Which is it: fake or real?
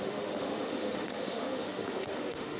fake